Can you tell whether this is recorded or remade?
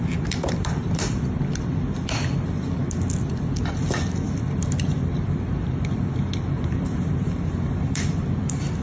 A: remade